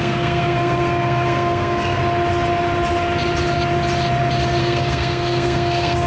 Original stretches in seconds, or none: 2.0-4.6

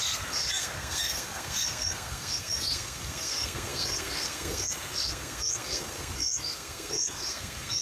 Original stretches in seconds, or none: none

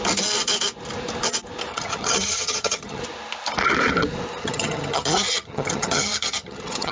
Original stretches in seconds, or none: 0.0-1.7; 3.0-4.4

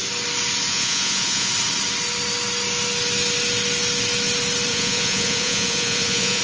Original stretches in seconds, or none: 0.0-0.7; 1.5-4.7